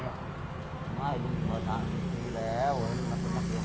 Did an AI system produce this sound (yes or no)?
no